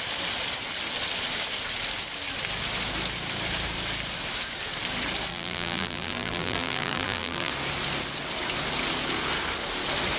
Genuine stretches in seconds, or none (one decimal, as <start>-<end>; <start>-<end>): 0.0-5.3; 7.5-10.2